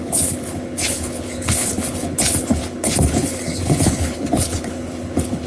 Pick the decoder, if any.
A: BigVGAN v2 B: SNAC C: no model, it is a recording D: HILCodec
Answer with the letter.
D